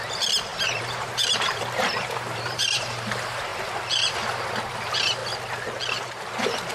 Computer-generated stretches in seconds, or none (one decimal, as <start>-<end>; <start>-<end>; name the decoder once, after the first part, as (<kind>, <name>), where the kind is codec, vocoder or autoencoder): 0.0-3.5 (vocoder, BigVGAN v2); 4.7-5.2; 6.0-6.7